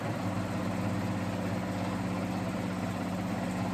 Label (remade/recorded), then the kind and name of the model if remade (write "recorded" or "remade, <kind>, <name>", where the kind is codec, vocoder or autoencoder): recorded